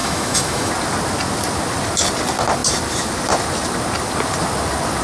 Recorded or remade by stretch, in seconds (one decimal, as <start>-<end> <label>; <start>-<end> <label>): 0.0-0.7 remade; 0.7-5.0 recorded